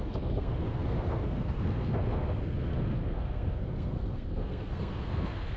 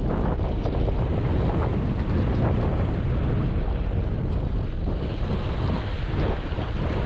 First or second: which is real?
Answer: second